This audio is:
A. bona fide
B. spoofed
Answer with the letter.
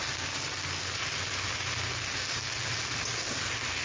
A